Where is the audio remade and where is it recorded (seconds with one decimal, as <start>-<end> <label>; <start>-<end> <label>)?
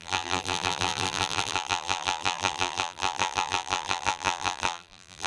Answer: 0.0-5.3 remade